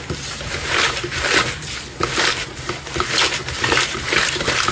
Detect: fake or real fake